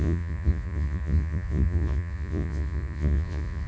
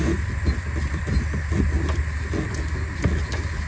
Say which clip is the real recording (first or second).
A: second